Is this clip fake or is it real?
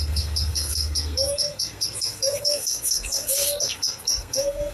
fake